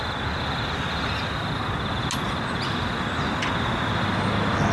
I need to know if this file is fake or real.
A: real